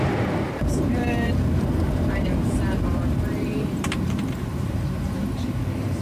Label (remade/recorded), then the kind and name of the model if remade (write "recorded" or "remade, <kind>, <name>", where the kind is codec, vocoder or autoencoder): remade, vocoder, BigVGAN v2